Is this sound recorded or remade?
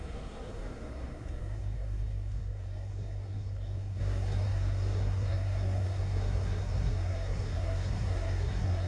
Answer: remade